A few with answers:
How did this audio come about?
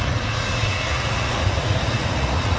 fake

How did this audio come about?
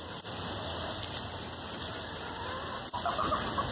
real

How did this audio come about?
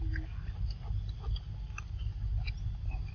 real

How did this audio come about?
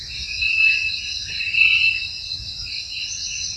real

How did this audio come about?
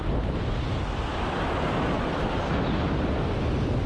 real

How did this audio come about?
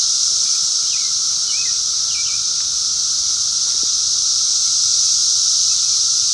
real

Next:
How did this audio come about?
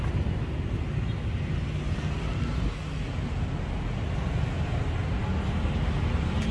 real